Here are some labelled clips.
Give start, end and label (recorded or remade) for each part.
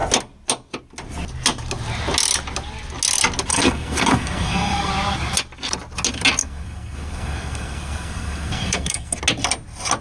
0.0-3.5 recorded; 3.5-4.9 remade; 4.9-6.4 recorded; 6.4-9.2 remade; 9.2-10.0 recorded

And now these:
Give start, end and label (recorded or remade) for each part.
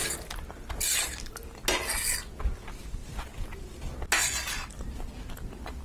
0.0-5.8 recorded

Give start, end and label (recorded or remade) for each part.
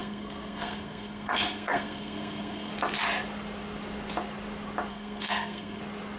0.0-2.7 remade; 2.7-4.9 recorded; 4.9-5.8 remade; 5.8-6.2 recorded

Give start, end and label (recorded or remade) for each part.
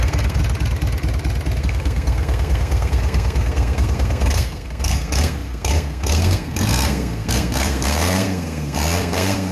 0.0-0.4 remade; 0.4-1.6 recorded; 1.6-9.5 remade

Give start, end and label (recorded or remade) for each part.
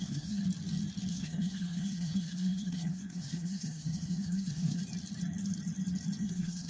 0.0-0.4 remade; 0.4-1.1 recorded; 1.1-4.8 remade; 4.8-6.2 recorded; 6.2-6.7 remade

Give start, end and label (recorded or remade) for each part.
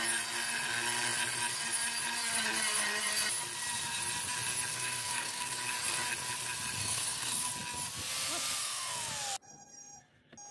0.0-4.7 recorded; 4.7-5.6 remade; 5.6-6.8 recorded; 6.8-7.5 remade; 7.5-8.6 recorded; 8.6-9.1 remade; 9.1-10.5 recorded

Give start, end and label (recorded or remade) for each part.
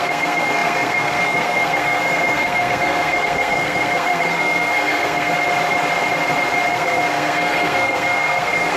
0.0-5.3 remade; 5.3-6.7 recorded; 6.7-8.8 remade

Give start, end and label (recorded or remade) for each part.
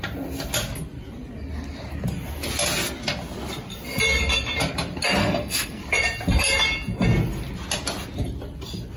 0.0-5.2 recorded; 5.2-5.8 remade; 5.8-9.0 recorded